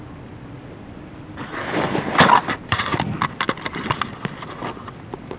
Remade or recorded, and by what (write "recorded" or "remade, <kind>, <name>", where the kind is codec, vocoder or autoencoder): recorded